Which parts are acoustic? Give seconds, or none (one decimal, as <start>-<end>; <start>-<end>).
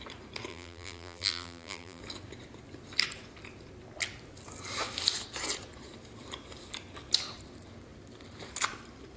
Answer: 0.0-0.5; 2.0-9.2